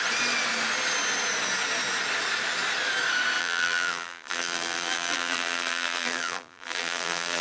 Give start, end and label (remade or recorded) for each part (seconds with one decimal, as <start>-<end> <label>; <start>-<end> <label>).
0.0-3.4 recorded; 3.4-7.4 remade